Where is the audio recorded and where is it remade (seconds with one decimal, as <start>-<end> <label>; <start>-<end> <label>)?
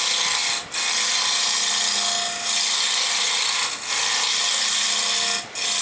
0.0-5.8 recorded